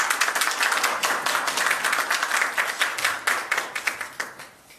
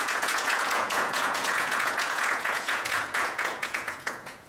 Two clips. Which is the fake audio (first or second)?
second